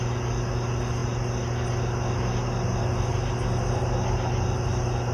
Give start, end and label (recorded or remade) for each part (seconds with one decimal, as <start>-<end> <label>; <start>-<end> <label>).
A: 0.0-5.1 recorded